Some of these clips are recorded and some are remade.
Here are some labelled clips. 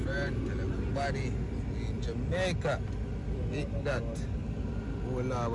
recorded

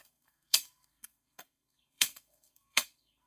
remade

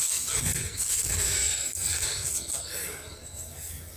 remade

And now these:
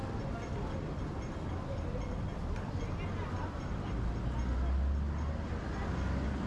recorded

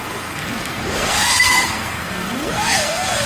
remade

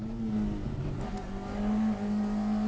recorded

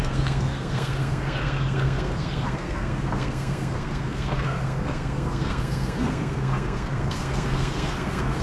remade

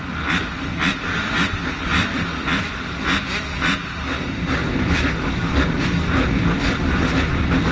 recorded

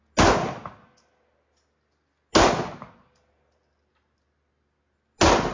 recorded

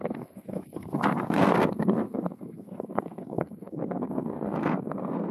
remade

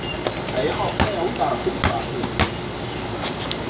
recorded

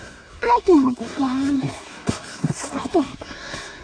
remade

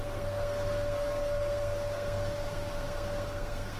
remade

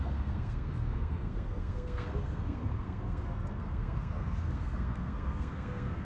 remade